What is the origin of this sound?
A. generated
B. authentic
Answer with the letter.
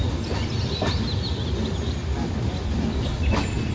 B